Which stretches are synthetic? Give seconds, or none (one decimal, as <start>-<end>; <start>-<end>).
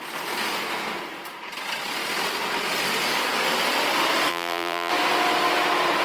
4.3-4.9